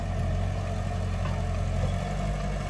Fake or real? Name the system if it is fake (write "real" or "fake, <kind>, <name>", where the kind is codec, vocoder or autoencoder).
real